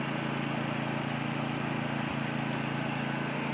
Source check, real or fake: real